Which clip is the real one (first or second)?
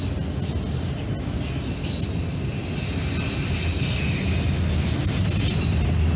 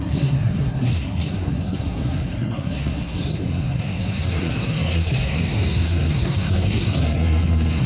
first